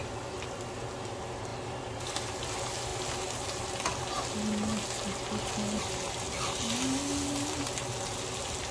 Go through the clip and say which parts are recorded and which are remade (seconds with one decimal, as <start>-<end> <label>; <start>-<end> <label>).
0.0-8.7 recorded